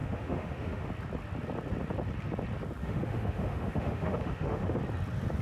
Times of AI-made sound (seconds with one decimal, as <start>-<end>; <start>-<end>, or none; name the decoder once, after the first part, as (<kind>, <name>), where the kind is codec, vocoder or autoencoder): 0.0-0.9 (autoencoder, DAC-VAE); 2.8-4.8